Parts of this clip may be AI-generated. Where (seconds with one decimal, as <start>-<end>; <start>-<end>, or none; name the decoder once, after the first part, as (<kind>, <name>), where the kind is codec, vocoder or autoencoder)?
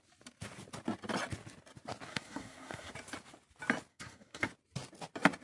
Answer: 2.1-2.9 (codec, SNAC); 3.9-4.5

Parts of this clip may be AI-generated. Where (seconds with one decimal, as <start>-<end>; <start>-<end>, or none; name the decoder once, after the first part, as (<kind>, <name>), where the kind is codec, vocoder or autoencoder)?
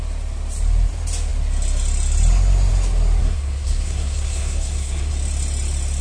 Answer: 3.2-5.1 (codec, SNAC)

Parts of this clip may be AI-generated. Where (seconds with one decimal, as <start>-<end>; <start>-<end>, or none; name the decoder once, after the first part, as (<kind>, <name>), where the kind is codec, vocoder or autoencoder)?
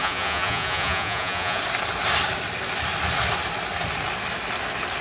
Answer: 0.0-1.6 (vocoder, Vocos)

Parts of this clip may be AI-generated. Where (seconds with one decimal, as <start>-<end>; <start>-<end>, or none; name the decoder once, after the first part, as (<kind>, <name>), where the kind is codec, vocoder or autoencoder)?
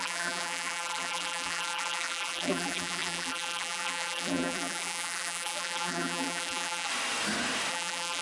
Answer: 0.0-6.9 (vocoder, BigVGAN v2); 7.7-8.2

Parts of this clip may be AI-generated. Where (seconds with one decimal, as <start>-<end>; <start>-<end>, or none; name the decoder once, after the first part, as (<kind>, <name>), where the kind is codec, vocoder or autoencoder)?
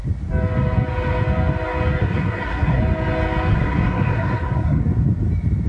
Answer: 2.0-2.8 (codec, SNAC); 3.5-4.8